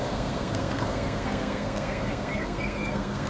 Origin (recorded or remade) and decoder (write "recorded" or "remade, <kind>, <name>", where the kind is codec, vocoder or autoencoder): remade, codec, SNAC